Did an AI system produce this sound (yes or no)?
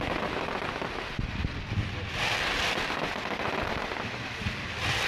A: no